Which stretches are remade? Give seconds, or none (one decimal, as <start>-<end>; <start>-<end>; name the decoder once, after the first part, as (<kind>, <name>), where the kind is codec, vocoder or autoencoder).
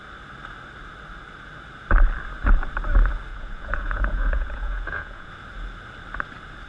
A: 3.3-5.3 (vocoder, Vocos)